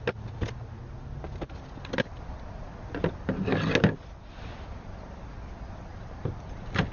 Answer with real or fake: real